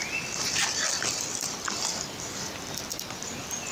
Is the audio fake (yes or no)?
no